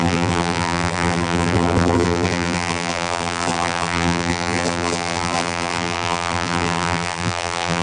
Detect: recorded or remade remade